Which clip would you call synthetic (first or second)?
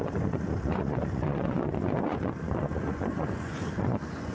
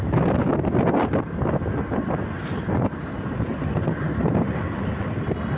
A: first